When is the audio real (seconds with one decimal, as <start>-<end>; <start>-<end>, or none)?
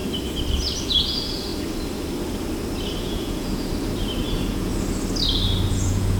0.0-0.8; 1.5-3.0; 3.7-4.3; 4.7-5.7